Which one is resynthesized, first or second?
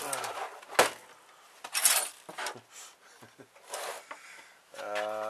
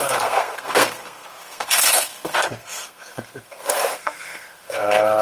second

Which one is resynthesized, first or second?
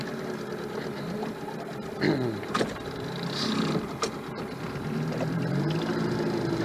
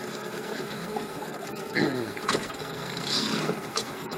second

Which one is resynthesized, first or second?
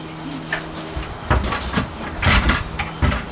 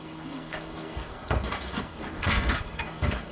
second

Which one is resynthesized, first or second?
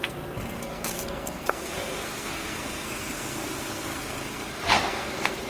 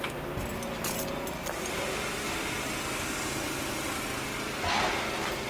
first